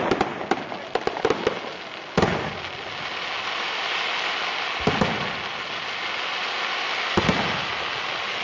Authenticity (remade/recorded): recorded